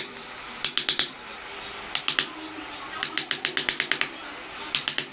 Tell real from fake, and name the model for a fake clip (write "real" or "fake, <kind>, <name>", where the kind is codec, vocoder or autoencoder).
real